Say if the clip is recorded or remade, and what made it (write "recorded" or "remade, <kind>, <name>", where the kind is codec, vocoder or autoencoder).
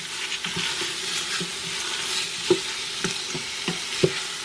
recorded